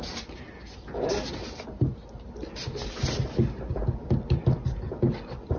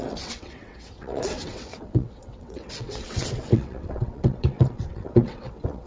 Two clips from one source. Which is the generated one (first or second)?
second